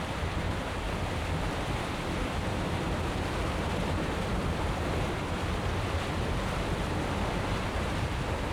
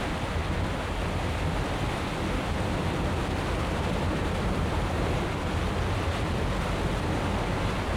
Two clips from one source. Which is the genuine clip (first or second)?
second